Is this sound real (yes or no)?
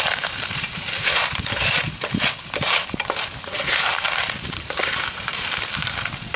no